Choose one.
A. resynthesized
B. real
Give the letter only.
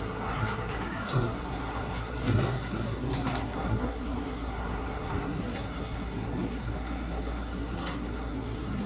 A